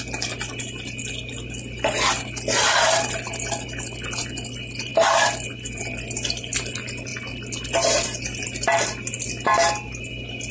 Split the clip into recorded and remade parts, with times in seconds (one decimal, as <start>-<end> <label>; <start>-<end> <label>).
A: 0.0-10.5 recorded